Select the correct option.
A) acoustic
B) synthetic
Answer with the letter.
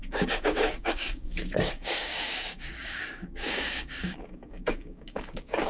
B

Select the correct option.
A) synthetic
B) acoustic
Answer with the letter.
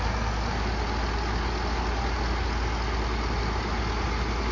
B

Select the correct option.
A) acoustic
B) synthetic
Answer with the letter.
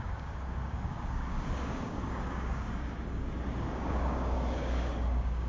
B